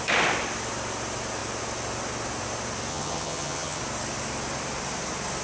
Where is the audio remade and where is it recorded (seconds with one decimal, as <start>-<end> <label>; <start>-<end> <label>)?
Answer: 0.0-2.9 recorded; 2.9-3.8 remade; 3.8-5.4 recorded